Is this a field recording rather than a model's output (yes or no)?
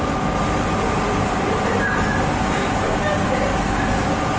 yes